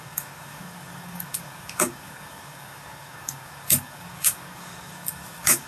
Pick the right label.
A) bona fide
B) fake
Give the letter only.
B